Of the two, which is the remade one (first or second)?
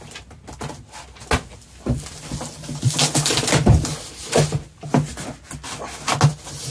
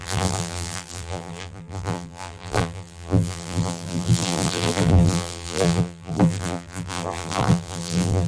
second